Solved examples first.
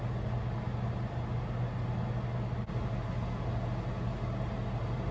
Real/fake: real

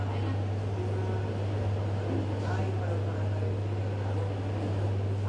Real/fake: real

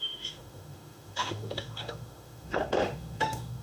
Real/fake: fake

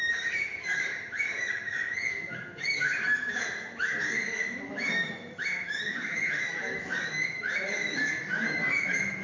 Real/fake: fake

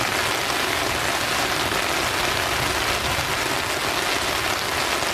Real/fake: real